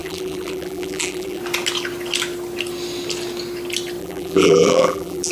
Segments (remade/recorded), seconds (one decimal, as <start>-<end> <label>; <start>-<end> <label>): 0.0-1.4 remade; 1.4-4.0 recorded; 4.0-5.3 remade